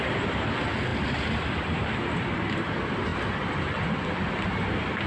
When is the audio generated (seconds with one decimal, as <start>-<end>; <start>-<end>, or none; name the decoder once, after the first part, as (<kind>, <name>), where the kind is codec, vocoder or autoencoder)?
0.9-2.0 (vocoder, BigVGAN v2)